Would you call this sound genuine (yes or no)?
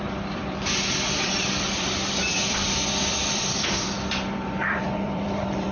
no